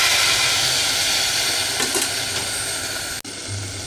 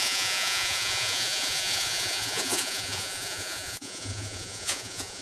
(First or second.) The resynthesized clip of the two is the second